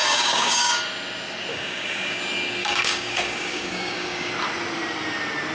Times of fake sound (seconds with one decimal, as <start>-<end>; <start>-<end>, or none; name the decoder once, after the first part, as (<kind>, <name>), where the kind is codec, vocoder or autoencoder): 0.0-0.8 (codec, DAC); 1.5-2.2; 2.6-4.3